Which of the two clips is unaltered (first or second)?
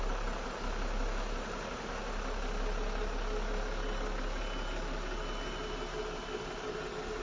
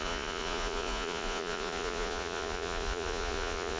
first